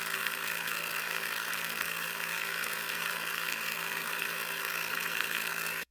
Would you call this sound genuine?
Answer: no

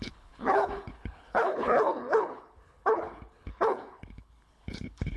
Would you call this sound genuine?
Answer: no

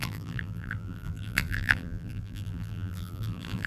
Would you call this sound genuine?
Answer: no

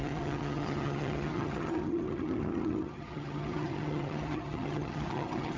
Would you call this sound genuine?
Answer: no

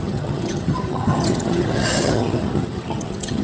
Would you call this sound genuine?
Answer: no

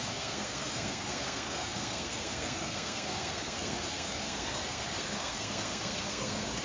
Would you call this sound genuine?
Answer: no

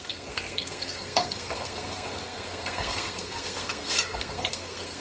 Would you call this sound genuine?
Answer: no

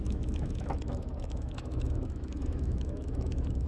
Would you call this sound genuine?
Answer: no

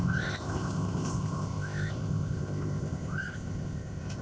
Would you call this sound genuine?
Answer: no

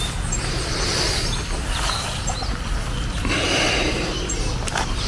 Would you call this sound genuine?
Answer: yes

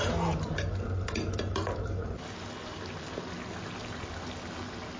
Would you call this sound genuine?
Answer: yes